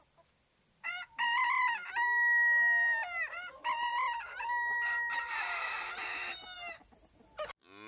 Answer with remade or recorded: recorded